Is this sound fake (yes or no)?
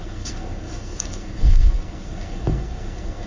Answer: yes